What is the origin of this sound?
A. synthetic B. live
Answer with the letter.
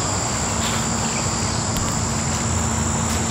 B